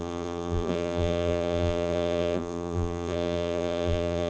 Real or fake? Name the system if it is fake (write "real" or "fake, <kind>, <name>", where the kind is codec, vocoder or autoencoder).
fake, vocoder, BigVGAN v2